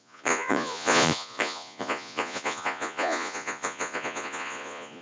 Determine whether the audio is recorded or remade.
remade